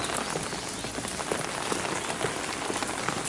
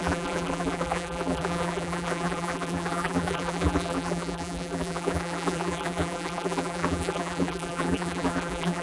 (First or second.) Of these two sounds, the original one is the first